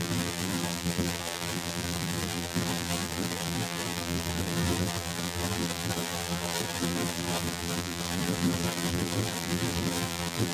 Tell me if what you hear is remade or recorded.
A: remade